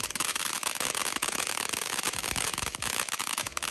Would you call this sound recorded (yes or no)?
no